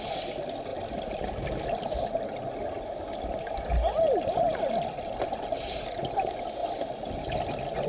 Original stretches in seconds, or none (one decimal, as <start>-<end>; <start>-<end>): 0.0-7.9